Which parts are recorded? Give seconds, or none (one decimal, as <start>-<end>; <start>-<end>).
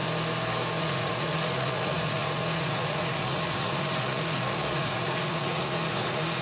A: 0.0-0.8